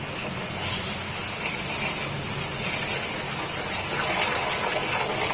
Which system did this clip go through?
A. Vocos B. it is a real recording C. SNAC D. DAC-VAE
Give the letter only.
B